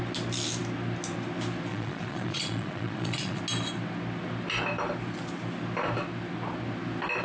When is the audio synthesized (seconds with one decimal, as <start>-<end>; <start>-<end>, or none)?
1.7-3.4